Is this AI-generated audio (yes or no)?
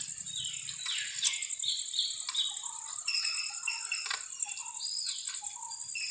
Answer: no